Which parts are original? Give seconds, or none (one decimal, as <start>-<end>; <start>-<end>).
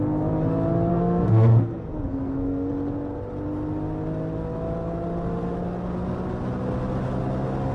0.0-0.9; 2.7-7.7